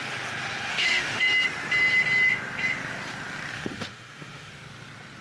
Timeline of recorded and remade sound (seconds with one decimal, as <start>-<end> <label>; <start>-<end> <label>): 0.0-0.7 recorded; 0.7-1.2 remade; 1.2-3.5 recorded; 3.5-4.5 remade; 4.5-5.2 recorded